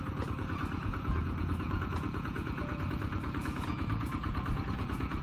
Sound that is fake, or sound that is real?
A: fake